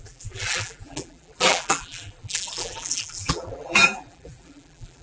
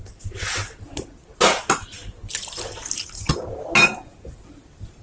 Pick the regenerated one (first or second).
first